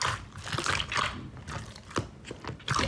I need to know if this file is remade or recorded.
recorded